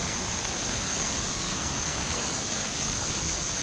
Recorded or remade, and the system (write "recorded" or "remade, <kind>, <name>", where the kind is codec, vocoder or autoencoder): remade, codec, SNAC